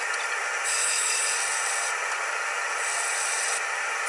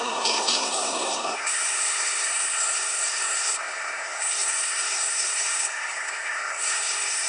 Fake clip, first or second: second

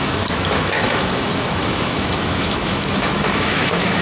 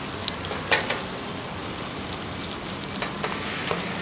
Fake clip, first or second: first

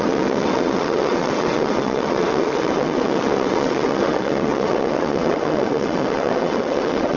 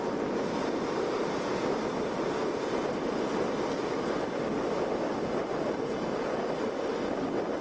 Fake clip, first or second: first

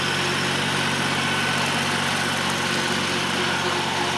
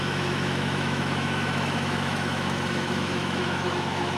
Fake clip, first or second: second